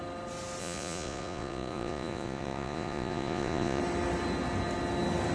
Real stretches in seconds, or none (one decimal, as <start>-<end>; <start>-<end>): 0.0-0.6; 3.8-5.3